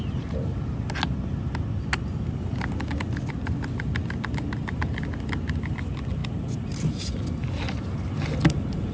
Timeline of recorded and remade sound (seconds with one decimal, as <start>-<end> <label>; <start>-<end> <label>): 0.0-8.9 recorded